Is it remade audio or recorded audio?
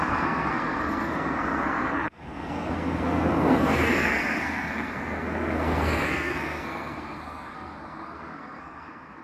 remade